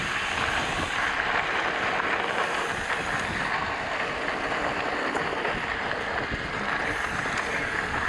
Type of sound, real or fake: real